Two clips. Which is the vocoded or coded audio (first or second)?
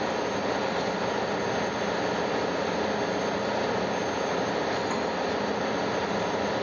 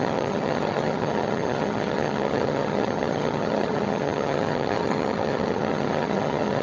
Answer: second